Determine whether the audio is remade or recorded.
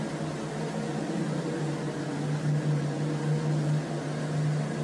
recorded